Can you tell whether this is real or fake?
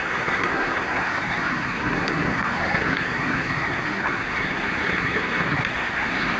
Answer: fake